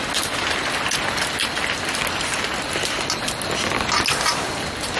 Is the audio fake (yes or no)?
no